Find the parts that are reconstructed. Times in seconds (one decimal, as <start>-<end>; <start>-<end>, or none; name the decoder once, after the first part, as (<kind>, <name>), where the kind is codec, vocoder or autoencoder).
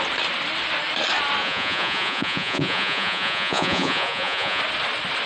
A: 1.4-4.6 (vocoder, Vocos)